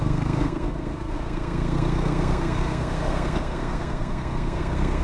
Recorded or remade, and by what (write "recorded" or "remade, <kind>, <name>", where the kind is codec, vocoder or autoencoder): remade, codec, SNAC